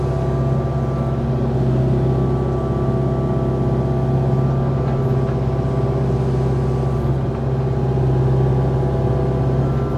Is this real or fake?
real